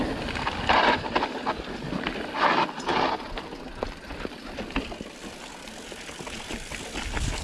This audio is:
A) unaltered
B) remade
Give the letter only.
A